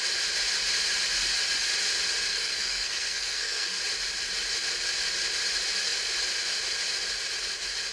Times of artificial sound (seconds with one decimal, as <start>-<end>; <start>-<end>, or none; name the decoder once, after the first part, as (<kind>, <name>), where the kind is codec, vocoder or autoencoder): 2.3-3.8 (codec, SNAC)